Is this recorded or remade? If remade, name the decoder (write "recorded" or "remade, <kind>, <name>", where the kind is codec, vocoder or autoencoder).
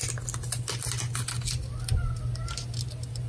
recorded